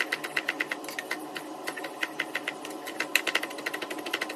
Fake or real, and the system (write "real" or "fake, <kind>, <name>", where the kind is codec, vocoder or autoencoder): real